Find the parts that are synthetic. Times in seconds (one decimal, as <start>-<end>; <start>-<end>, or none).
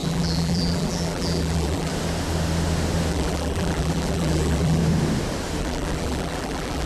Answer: 0.0-1.9; 3.1-4.8; 5.6-6.9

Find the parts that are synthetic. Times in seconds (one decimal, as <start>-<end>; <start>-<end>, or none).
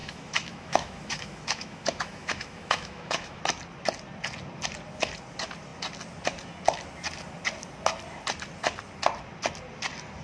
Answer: 0.0-3.4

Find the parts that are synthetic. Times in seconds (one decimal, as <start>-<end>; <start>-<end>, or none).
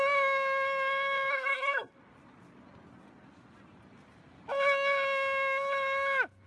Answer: 1.3-1.9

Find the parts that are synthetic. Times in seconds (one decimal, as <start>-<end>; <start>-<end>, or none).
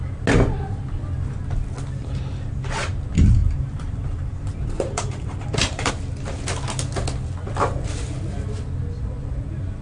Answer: 3.4-5.9